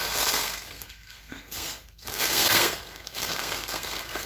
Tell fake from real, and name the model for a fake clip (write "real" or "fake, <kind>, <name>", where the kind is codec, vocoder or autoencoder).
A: fake, codec, SNAC